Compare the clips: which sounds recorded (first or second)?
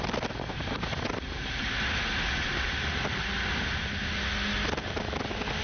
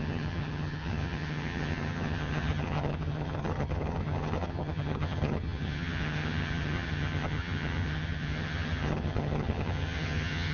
first